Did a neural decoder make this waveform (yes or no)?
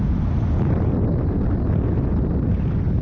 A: no